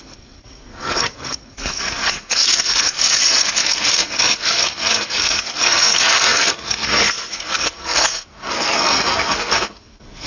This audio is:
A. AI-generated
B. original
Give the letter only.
A